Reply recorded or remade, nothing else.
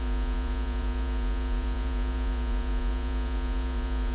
remade